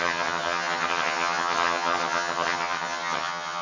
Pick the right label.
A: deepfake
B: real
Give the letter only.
A